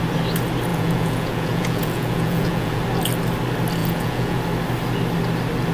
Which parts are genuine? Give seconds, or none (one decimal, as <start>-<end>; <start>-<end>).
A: 0.0-0.7; 2.8-3.8; 4.4-5.7